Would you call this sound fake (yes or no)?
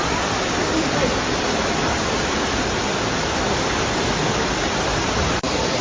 no